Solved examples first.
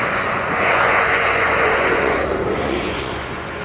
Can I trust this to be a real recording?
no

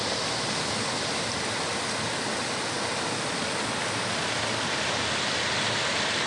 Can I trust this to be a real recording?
yes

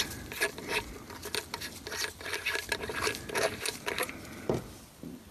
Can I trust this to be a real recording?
yes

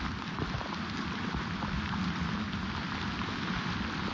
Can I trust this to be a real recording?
yes